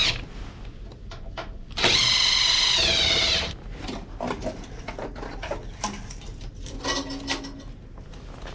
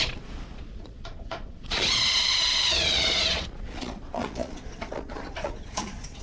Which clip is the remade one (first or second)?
second